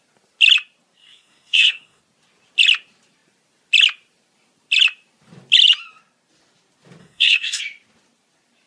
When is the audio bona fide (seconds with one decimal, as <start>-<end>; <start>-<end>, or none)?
0.0-1.0; 2.0-7.0; 7.6-8.7